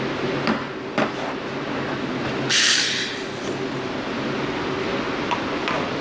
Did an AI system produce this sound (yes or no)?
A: no